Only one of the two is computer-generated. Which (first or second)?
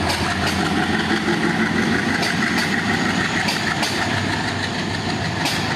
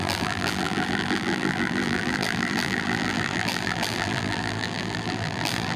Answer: second